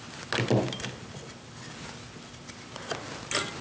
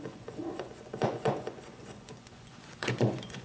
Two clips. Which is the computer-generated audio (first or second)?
second